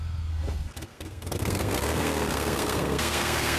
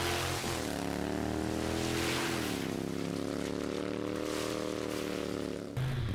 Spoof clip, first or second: first